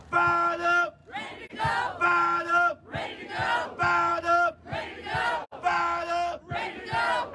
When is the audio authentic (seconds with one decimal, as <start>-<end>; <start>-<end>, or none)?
0.0-7.3